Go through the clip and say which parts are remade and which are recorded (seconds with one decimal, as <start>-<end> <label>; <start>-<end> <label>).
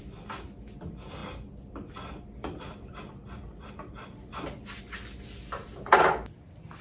0.0-6.8 recorded